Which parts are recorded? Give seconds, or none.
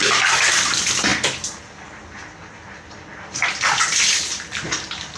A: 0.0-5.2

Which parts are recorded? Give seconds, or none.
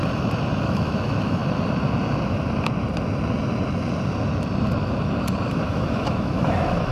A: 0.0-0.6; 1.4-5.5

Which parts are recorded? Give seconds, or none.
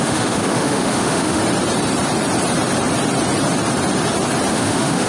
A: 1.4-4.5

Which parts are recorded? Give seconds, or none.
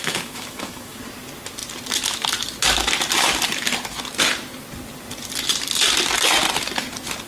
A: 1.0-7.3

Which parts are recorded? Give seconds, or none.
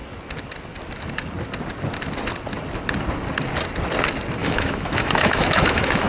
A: 0.0-4.4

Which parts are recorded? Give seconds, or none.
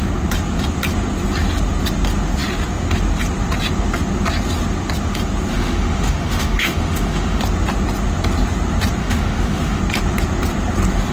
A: 0.0-5.5; 7.4-9.0; 9.8-11.1